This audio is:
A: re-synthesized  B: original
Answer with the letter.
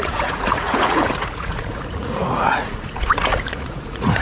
A